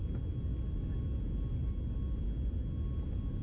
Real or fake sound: real